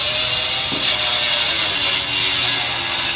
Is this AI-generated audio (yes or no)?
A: no